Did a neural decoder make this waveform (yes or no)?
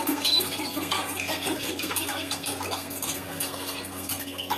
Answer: yes